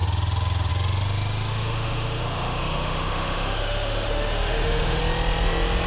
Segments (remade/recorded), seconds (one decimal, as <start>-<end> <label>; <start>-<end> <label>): 0.0-1.5 recorded; 1.5-5.0 remade; 5.0-5.9 recorded